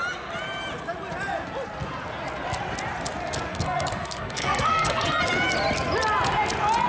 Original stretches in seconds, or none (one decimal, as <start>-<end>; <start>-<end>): 0.0-3.5; 5.2-6.9